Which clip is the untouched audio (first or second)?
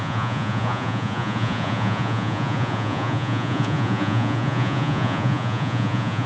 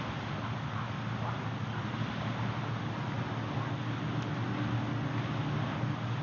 second